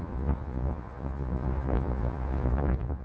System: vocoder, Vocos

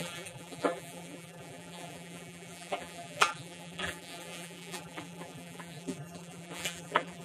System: vocoder, BigVGAN v2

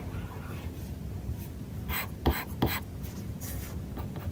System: none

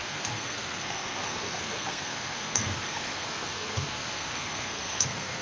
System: codec, SNAC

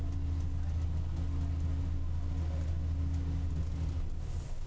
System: none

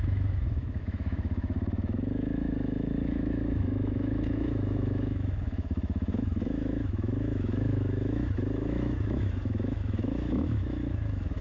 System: autoencoder, DAC-VAE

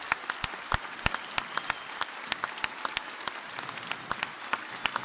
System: none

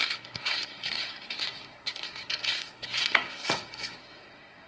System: codec, SNAC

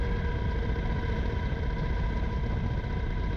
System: none